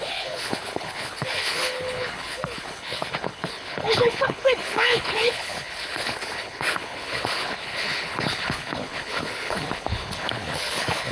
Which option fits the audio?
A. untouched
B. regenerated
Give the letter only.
B